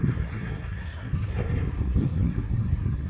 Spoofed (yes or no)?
yes